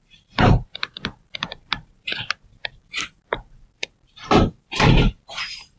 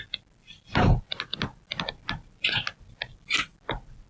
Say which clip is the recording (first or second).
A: second